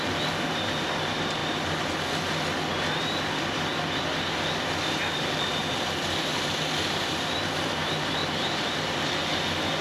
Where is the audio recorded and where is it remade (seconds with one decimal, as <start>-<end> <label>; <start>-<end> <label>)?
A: 0.0-1.4 remade; 1.4-5.1 recorded; 5.1-8.2 remade; 8.2-9.8 recorded